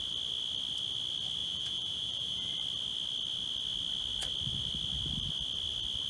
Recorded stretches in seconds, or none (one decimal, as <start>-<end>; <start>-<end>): 0.0-1.4; 2.5-6.1